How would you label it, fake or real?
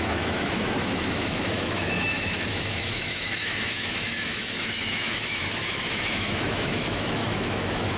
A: fake